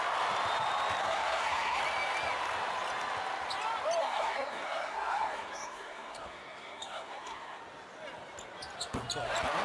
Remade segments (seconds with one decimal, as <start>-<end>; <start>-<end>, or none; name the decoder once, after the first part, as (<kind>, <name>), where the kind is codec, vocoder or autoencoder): 1.0-1.8 (codec, SNAC); 4.0-7.6